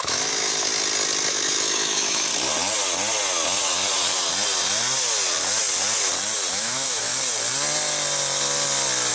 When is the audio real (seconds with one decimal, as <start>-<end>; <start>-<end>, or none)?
0.7-1.3; 2.3-6.5; 7.1-9.1